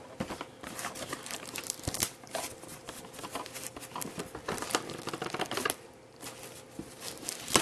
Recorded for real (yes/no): no